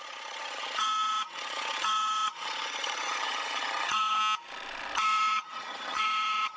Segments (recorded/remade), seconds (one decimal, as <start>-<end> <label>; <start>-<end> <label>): 0.0-4.2 remade; 4.2-5.0 recorded; 5.0-6.6 remade